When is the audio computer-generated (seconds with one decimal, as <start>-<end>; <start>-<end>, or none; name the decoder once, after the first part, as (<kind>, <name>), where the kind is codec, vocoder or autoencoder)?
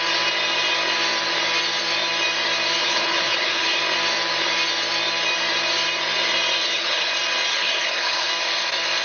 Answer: 2.8-3.8 (codec, HILCodec); 6.6-7.1; 7.5-8.3